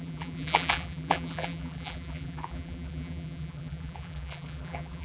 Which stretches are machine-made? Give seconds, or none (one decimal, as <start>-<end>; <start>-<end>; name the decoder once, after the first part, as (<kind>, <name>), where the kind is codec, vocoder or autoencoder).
0.0-5.0 (vocoder, BigVGAN v2)

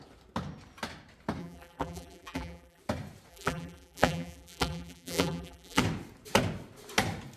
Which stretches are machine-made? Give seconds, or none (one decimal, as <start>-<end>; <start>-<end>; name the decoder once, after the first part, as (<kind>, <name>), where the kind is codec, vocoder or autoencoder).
1.4-2.8 (vocoder, BigVGAN v2); 3.3-5.8